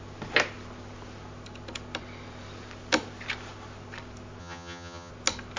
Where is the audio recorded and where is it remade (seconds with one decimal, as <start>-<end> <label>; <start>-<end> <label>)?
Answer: 0.0-4.4 recorded; 4.4-5.1 remade; 5.1-5.6 recorded